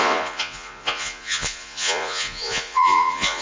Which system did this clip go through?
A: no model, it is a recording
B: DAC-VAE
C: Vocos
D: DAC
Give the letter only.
C